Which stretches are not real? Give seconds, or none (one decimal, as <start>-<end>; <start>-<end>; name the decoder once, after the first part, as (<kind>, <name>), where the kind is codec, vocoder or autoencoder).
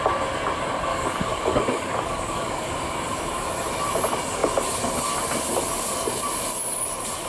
0.9-2.7 (codec, DAC)